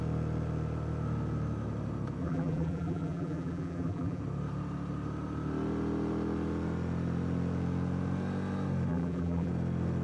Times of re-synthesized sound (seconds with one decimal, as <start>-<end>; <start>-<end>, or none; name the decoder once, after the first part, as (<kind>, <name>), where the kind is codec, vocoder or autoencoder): 2.2-4.2 (vocoder, BigVGAN v2); 8.9-9.5